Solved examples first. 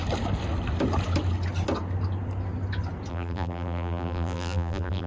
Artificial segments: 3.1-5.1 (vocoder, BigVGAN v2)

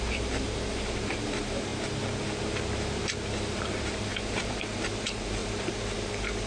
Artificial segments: 0.0-1.7 (vocoder, BigVGAN v2); 2.4-6.5

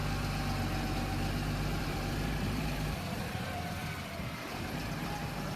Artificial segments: 1.8-3.8 (vocoder, BigVGAN v2); 4.4-5.6

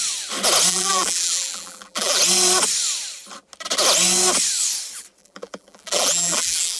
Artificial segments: 0.7-2.2 (vocoder, BigVGAN v2); 5.2-6.8

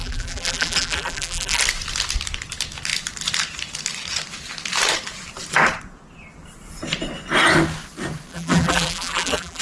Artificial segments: 0.0-1.6 (vocoder, BigVGAN v2); 8.3-9.6

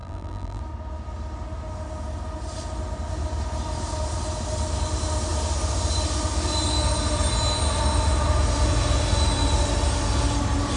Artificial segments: 0.0-0.6 (vocoder, BigVGAN v2)